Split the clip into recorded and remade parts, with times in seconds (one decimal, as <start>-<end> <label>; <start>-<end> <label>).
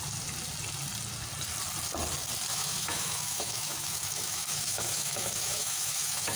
0.0-2.5 recorded; 2.5-6.4 remade